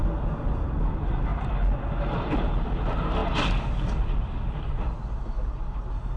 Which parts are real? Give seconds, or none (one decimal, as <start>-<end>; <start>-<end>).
0.0-6.2